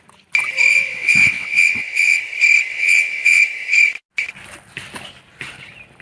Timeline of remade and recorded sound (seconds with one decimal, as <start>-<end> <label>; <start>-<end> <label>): 0.0-0.7 recorded; 0.7-2.2 remade; 2.2-2.7 recorded; 2.7-3.4 remade; 3.4-6.0 recorded